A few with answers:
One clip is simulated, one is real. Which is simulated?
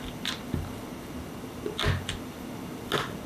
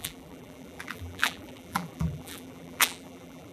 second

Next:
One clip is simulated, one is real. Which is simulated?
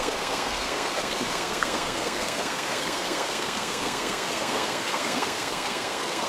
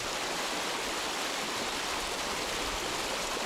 first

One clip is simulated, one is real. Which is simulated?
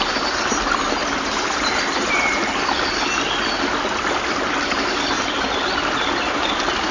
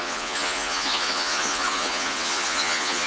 second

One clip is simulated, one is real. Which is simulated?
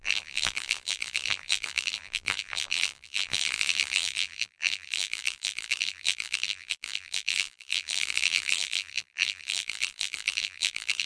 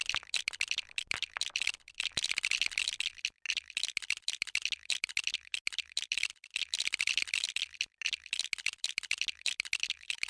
first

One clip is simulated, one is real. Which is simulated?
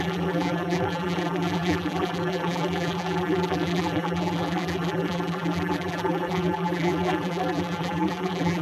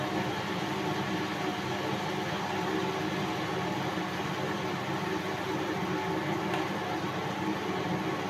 first